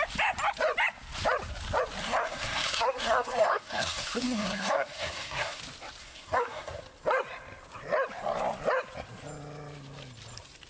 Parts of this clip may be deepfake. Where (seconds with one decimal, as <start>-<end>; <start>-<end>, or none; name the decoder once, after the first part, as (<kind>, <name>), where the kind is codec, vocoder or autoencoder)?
2.0-5.6 (codec, SNAC); 6.0-6.8